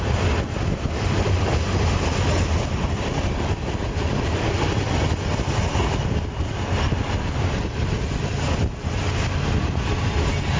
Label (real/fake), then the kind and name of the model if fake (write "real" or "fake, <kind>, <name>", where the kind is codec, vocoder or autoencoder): real